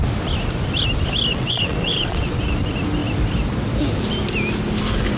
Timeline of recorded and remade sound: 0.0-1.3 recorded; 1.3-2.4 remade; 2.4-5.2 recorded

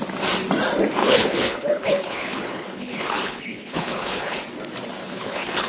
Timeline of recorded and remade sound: 0.0-1.0 recorded; 1.0-4.4 remade; 4.4-5.0 recorded; 5.0-5.7 remade